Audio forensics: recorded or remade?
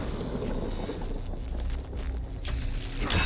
recorded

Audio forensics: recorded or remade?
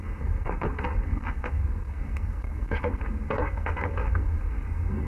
remade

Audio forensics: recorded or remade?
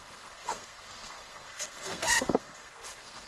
remade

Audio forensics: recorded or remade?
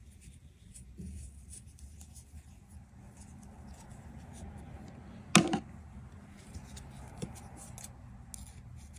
recorded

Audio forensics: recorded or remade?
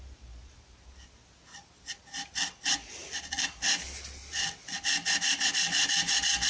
recorded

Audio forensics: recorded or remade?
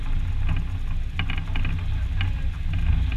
recorded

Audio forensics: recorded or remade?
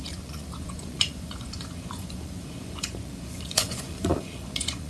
remade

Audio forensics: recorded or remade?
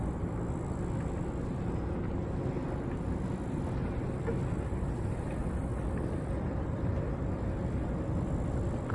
recorded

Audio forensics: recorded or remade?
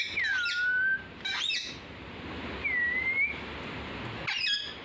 recorded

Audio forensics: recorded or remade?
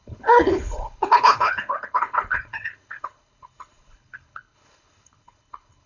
remade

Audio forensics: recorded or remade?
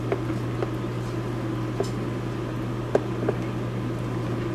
recorded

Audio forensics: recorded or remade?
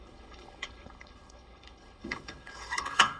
remade